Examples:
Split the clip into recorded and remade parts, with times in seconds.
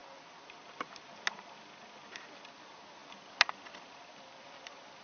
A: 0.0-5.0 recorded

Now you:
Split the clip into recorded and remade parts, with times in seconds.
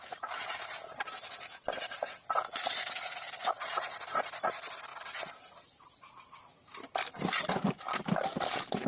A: 0.0-8.9 recorded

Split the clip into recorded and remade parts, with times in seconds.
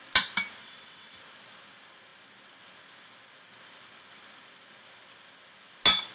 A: 0.0-0.6 recorded; 0.6-1.2 remade; 1.2-6.1 recorded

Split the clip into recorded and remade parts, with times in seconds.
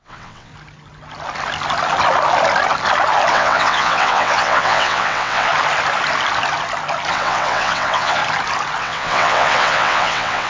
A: 0.0-0.5 remade; 0.5-3.3 recorded; 3.3-5.5 remade; 5.5-7.1 recorded; 7.1-8.2 remade; 8.2-8.8 recorded; 8.8-10.5 remade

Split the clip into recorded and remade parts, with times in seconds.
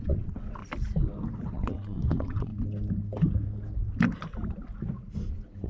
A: 0.0-0.6 remade; 0.6-1.5 recorded; 1.5-2.5 remade; 2.5-5.3 recorded; 5.3-5.7 remade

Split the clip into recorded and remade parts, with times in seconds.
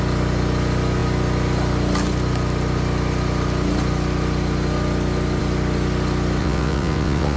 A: 0.0-6.4 recorded; 6.4-7.4 remade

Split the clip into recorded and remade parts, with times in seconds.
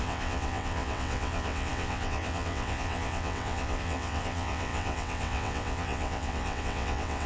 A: 0.0-7.3 remade